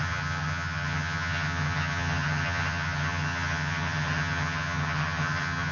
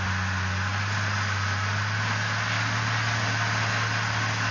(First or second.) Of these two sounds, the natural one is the second